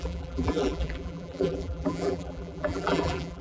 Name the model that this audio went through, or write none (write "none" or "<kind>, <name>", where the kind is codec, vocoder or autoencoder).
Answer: vocoder, BigVGAN v2